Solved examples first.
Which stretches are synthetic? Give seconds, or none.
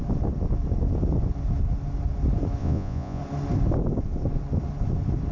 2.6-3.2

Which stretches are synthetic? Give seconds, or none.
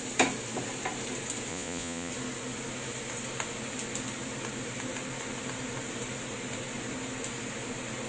1.5-2.1